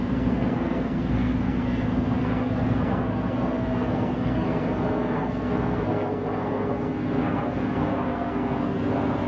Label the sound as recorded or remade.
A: remade